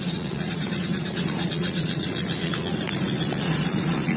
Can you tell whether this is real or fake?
fake